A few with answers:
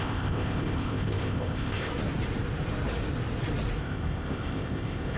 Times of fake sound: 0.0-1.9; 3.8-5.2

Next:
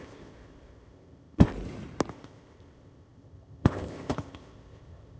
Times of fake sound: 0.0-1.5; 2.1-5.2

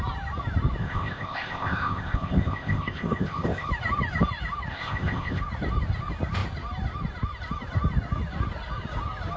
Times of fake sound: 0.8-3.7; 4.7-5.4

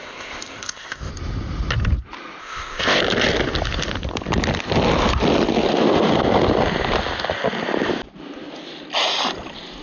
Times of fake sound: 0.0-1.1; 2.4-3.0

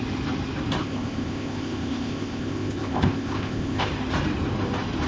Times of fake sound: 0.8-3.9

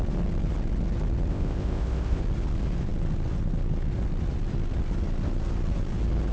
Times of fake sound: 1.3-2.2

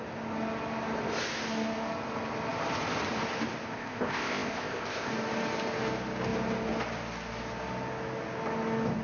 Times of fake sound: 3.7-5.1